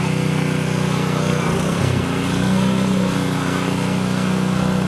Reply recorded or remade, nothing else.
remade